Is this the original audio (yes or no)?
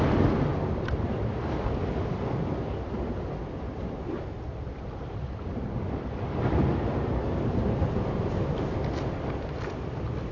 yes